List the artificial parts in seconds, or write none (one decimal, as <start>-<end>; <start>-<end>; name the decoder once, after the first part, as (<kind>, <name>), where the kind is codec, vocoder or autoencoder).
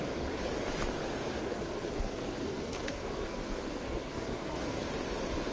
1.5-4.8 (codec, SNAC)